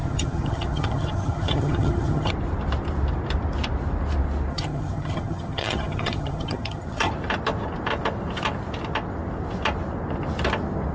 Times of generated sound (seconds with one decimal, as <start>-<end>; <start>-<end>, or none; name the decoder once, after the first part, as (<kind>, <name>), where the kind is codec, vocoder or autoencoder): 0.0-2.3 (vocoder, HiFi-GAN); 4.5-7.1